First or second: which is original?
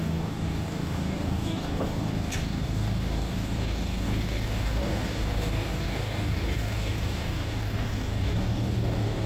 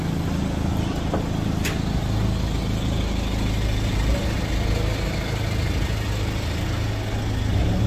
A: second